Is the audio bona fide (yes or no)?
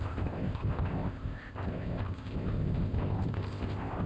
no